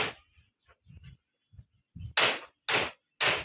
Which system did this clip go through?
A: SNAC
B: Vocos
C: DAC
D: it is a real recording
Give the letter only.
D